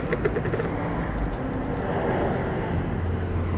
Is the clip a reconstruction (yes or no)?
no